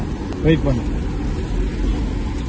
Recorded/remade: recorded